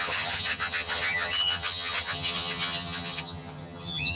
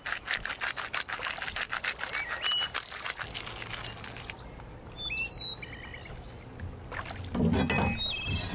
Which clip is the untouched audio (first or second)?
second